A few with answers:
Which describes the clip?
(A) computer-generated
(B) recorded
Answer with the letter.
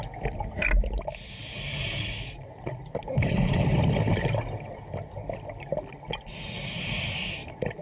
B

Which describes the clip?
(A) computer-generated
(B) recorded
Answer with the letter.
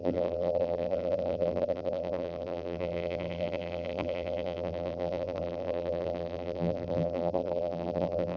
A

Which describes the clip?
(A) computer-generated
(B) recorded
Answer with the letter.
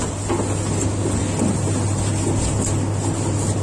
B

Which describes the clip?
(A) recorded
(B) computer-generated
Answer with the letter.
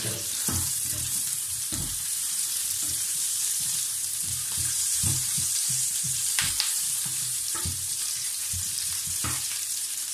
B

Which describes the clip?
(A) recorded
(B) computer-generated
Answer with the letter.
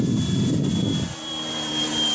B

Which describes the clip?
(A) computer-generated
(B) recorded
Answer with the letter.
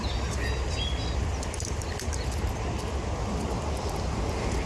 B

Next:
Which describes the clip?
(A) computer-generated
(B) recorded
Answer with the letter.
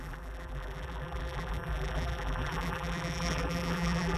A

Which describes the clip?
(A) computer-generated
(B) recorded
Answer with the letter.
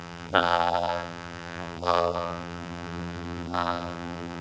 A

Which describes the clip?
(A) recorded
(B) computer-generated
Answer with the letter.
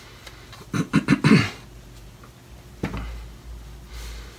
A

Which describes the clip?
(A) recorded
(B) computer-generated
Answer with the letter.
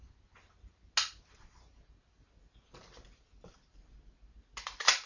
A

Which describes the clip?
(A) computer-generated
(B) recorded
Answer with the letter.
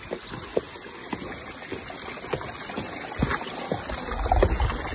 B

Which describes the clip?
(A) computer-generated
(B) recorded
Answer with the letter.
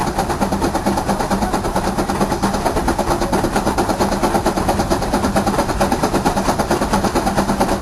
B